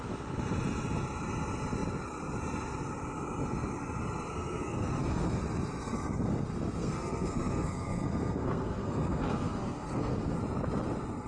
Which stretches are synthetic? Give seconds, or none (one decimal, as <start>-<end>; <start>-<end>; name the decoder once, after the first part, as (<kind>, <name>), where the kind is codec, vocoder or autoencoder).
4.3-5.4 (codec, SNAC); 6.8-10.4